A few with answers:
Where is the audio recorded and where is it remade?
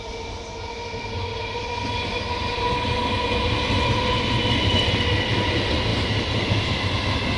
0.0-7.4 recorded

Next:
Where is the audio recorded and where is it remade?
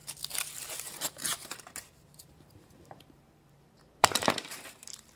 0.0-0.6 recorded; 0.6-5.2 remade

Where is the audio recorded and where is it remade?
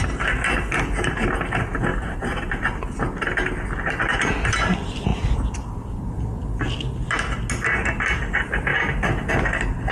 0.0-1.9 recorded; 1.9-3.0 remade; 3.0-5.1 recorded; 5.1-6.2 remade; 6.2-8.7 recorded; 8.7-9.3 remade; 9.3-9.9 recorded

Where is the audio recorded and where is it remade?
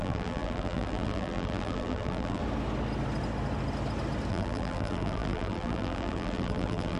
0.0-2.4 remade; 2.4-4.3 recorded; 4.3-7.0 remade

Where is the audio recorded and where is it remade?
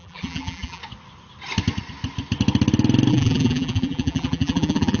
0.0-0.8 remade; 0.8-3.1 recorded; 3.1-5.0 remade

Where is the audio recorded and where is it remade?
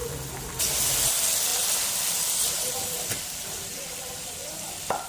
0.0-0.6 remade; 0.6-1.5 recorded; 1.5-4.3 remade; 4.3-5.1 recorded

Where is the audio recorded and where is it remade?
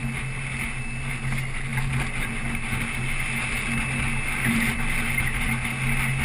0.0-6.2 recorded